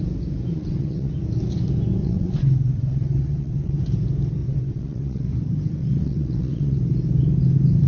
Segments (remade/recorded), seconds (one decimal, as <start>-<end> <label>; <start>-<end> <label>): 0.0-0.5 recorded; 0.5-1.1 remade; 1.1-2.0 recorded; 2.0-3.8 remade; 3.8-4.4 recorded; 4.4-5.3 remade; 5.3-5.8 recorded; 5.8-6.8 remade; 6.8-7.9 recorded